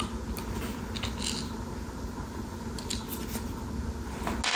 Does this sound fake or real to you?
real